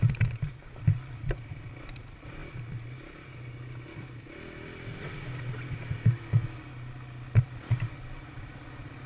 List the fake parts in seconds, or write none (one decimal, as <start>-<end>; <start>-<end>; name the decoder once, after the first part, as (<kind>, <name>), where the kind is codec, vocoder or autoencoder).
0.0-2.4 (vocoder, BigVGAN v2); 7.4-9.1